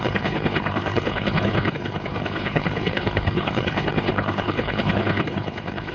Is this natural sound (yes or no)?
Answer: no